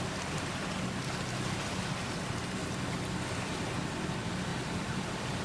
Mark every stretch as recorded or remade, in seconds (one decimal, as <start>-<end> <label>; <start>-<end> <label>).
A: 0.0-2.6 remade; 2.6-3.4 recorded; 3.4-5.4 remade